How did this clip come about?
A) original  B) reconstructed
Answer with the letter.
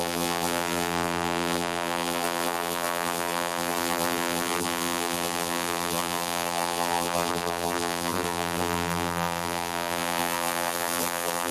B